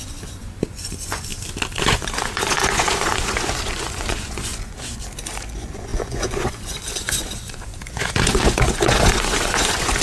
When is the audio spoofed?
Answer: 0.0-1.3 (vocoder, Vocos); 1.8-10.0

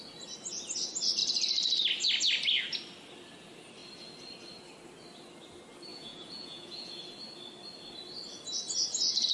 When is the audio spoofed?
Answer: 5.9-7.0 (vocoder, Vocos)

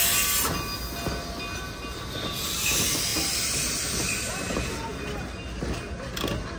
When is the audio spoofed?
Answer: none

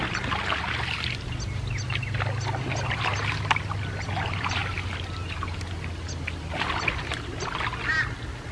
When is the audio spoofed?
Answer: none

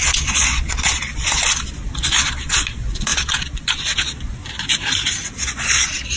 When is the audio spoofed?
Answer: 0.0-4.4 (vocoder, Vocos); 5.4-6.2

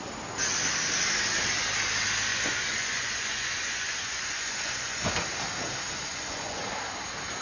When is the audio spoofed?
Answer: 2.3-5.1 (vocoder, Vocos); 6.1-6.6